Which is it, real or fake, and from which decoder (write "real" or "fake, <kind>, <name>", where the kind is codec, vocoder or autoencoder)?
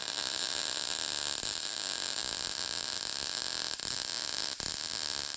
fake, vocoder, BigVGAN v2